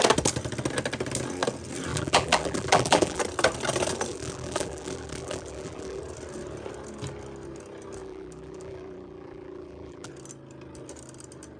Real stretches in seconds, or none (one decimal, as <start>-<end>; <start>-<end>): 0.0-1.9; 3.2-4.1; 6.0-8.0; 10.1-11.6